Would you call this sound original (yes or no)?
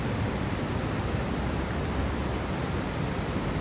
no